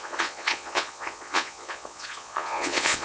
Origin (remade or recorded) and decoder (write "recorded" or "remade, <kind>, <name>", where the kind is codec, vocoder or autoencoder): remade, vocoder, Vocos